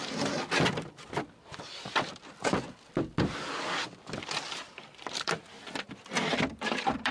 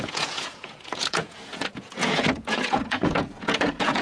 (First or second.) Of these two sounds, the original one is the first